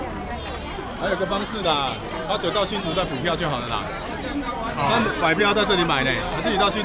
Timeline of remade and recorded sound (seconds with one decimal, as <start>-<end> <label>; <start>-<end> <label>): 0.0-6.8 recorded